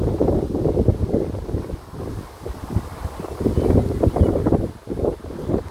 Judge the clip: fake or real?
real